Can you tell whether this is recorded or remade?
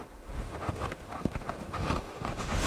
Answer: remade